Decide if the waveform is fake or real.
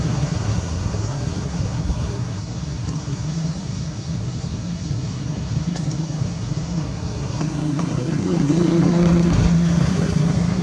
fake